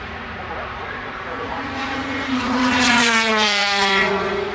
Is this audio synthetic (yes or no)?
yes